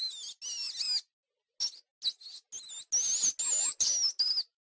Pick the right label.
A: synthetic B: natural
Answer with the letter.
B